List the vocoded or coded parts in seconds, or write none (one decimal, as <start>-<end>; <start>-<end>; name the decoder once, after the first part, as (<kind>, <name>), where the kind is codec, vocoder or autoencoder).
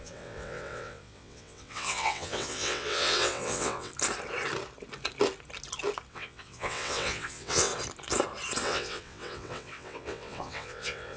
0.0-3.9 (vocoder, WaveNeXt); 6.1-7.7; 8.6-11.2